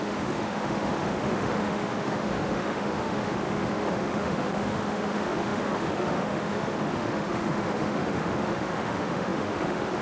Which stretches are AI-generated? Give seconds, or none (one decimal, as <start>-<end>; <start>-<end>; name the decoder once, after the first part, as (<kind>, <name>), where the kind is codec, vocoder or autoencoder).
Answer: 0.0-10.0 (autoencoder, DAC-VAE)

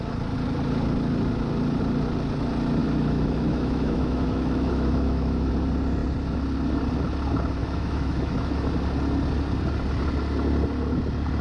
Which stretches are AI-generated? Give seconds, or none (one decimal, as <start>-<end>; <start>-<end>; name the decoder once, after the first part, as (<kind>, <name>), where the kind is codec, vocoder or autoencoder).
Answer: 2.8-5.5 (autoencoder, DAC-VAE); 7.6-8.7

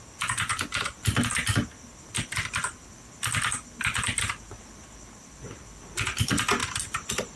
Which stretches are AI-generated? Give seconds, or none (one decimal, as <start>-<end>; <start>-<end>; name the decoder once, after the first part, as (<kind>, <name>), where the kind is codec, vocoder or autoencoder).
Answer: none

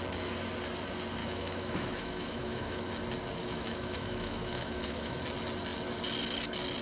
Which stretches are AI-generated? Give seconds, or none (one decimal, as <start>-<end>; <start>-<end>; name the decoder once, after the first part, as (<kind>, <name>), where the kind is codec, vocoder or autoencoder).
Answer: 1.2-2.9 (autoencoder, DAC-VAE); 3.4-5.2

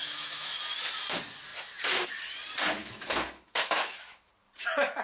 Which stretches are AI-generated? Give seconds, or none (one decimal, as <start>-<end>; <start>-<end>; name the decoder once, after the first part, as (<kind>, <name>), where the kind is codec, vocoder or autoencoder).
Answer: 0.0-0.6 (autoencoder, DAC-VAE); 2.8-4.3

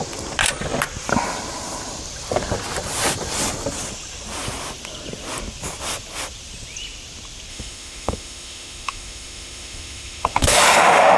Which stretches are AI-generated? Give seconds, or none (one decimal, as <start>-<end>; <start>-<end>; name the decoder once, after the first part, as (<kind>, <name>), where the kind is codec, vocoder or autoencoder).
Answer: 7.5-11.2 (autoencoder, DAC-VAE)

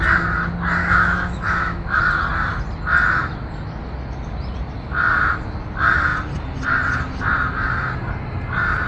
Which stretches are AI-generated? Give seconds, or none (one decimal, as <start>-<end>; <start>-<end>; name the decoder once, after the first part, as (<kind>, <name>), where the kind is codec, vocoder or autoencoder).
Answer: 0.8-2.0 (autoencoder, DAC-VAE)

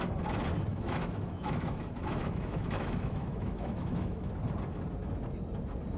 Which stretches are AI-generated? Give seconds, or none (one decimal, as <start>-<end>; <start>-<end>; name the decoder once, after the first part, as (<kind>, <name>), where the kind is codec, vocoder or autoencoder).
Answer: 0.7-4.3 (autoencoder, DAC-VAE)